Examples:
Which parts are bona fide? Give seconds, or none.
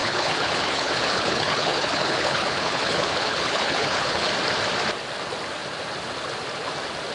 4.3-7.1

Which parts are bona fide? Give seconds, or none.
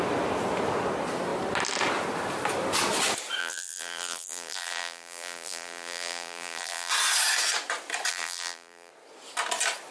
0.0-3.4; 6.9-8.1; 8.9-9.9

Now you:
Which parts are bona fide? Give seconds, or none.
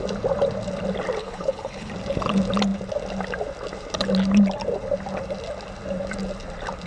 0.0-1.2; 1.9-6.9